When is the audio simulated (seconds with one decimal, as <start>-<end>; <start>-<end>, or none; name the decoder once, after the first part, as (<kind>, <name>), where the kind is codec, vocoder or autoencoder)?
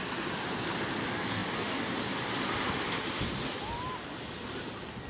none